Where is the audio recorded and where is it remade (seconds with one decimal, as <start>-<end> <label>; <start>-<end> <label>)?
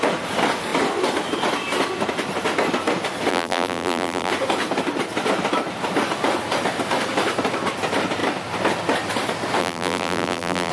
0.0-3.3 recorded; 3.3-4.3 remade; 4.3-9.6 recorded; 9.6-10.7 remade